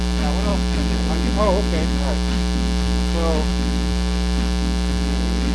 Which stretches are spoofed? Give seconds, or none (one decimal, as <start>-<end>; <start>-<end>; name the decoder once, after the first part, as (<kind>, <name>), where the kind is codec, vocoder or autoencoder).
none